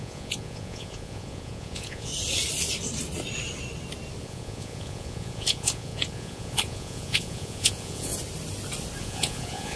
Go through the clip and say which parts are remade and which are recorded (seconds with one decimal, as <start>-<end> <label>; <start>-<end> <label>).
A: 0.0-2.1 remade; 2.1-4.2 recorded; 4.2-8.1 remade; 8.1-9.0 recorded; 9.0-9.8 remade